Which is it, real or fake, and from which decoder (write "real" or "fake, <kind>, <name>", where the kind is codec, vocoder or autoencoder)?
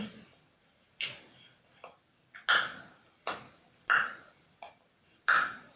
real